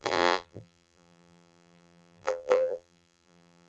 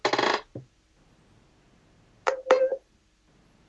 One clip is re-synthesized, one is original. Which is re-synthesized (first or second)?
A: first